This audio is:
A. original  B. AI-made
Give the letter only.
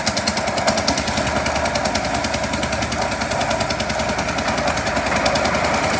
A